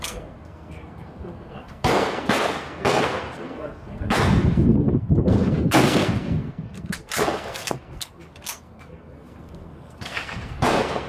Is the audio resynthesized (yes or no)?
yes